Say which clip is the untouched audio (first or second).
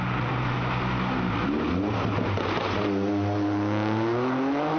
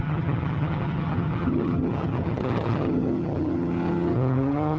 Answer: first